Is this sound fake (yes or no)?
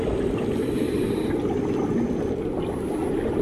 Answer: no